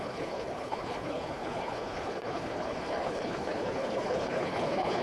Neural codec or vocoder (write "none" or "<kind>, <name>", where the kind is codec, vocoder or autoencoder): codec, HILCodec